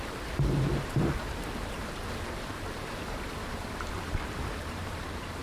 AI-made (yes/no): yes